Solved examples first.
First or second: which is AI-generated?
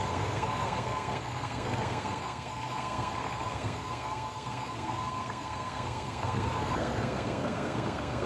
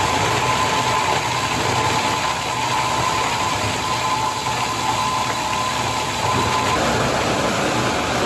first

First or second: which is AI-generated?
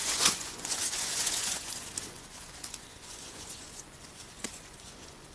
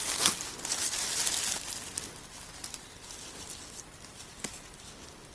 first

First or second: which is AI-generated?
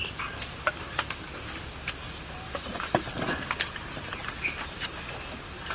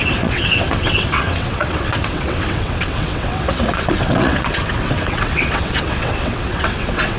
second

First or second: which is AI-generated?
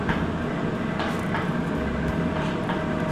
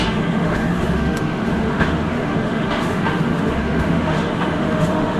second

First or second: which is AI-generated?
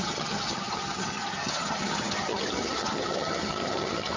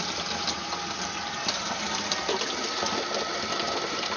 first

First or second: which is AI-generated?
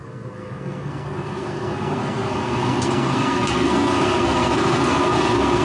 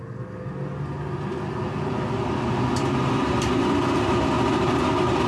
first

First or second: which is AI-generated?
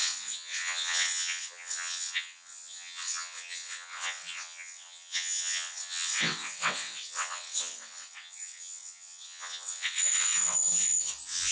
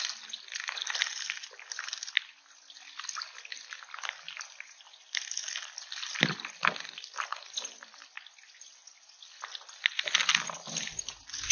first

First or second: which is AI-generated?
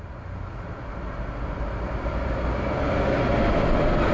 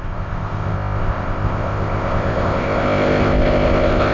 second